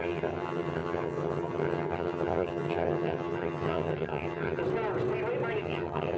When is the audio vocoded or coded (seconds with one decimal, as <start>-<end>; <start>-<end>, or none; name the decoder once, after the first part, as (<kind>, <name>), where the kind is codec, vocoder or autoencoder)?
0.0-4.6 (vocoder, HiFi-GAN); 5.6-6.2